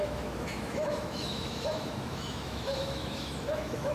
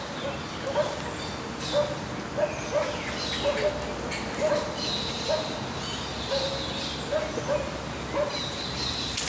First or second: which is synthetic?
first